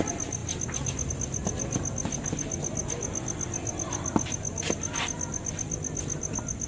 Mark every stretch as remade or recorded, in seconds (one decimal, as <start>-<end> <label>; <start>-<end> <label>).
0.0-6.7 recorded